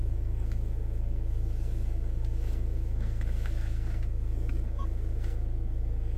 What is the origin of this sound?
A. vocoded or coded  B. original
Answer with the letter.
A